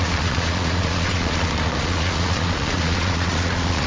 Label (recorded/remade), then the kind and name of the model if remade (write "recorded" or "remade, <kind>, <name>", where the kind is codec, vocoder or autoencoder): remade, vocoder, Vocos